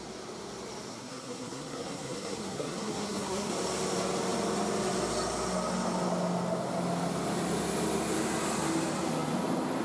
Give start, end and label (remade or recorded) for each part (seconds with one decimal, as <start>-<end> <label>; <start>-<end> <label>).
0.0-0.9 recorded; 0.9-3.5 remade; 3.5-9.8 recorded